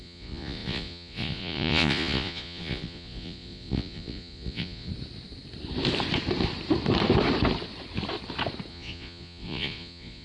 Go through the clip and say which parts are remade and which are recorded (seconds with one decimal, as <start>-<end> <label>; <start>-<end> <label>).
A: 0.0-4.9 remade; 4.9-8.7 recorded; 8.7-10.2 remade